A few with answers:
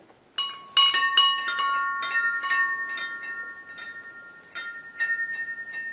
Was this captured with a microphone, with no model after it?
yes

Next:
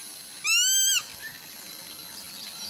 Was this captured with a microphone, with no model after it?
yes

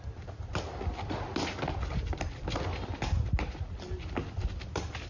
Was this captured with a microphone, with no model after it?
yes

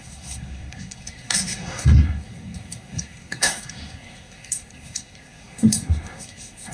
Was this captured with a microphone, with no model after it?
no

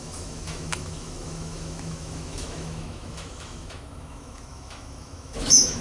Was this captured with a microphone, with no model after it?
no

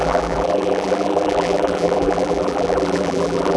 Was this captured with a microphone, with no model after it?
no